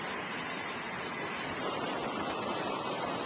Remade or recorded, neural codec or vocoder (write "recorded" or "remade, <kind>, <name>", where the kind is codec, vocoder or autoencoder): recorded